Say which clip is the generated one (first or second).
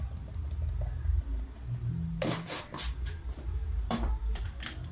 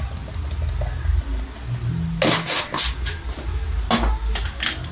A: first